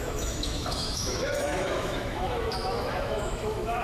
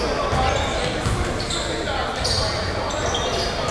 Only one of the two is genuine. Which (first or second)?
second